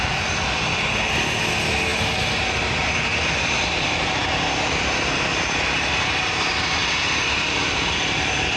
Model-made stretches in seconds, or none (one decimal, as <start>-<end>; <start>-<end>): none